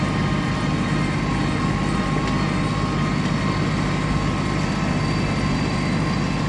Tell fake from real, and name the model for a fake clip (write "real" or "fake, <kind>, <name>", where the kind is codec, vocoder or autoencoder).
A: real